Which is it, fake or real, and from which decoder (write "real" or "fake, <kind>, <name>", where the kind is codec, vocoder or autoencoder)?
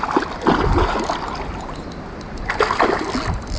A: real